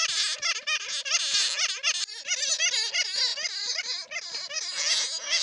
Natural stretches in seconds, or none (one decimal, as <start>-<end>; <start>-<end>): 0.0-5.4